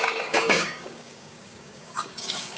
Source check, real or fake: fake